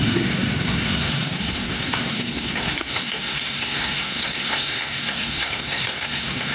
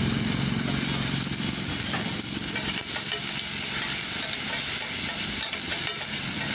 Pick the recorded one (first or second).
second